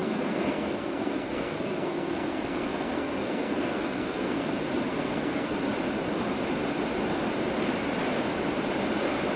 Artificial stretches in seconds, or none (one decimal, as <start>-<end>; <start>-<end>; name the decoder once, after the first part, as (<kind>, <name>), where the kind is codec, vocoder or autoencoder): 0.0-4.5 (codec, SNAC); 4.9-5.5